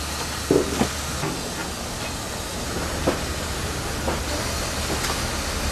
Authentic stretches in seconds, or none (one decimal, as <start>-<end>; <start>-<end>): 0.0-2.5; 3.7-5.7